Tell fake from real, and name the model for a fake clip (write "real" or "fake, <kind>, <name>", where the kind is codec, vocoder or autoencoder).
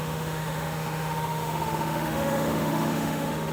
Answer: fake, autoencoder, DAC-VAE